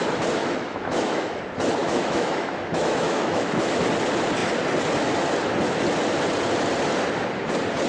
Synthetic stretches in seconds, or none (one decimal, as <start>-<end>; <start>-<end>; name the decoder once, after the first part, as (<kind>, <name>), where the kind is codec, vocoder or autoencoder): 0.4-1.4 (autoencoder, DAC-VAE); 1.8-3.8